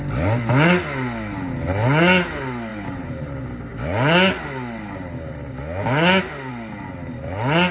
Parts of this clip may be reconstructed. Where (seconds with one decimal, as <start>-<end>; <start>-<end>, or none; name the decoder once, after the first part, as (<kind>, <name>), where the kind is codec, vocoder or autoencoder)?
2.7-3.3 (vocoder, BigVGAN v2)

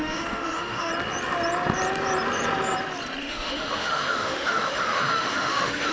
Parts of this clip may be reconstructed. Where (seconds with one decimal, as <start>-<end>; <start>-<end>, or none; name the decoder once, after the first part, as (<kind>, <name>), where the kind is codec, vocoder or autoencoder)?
0.0-0.9 (autoencoder, DAC-VAE); 3.2-5.9